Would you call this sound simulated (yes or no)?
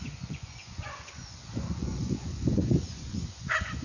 yes